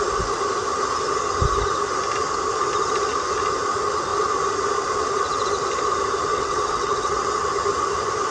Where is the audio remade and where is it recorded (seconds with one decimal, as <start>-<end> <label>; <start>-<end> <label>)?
0.0-6.3 recorded; 6.3-7.3 remade; 7.3-8.3 recorded